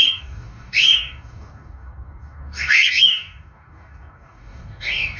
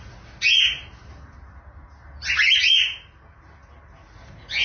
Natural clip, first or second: second